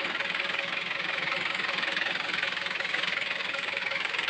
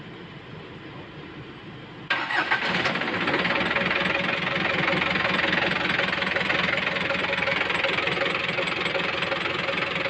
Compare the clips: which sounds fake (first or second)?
first